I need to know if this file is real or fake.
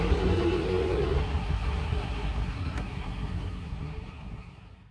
fake